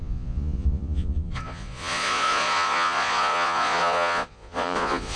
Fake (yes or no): yes